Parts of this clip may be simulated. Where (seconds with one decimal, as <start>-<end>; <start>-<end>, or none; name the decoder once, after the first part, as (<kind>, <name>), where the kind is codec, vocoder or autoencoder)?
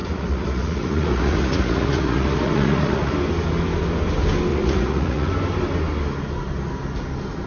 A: 0.0-3.1 (vocoder, Vocos); 4.5-5.3